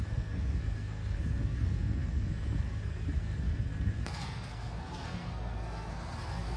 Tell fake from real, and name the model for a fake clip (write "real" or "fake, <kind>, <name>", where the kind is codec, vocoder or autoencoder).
fake, codec, SNAC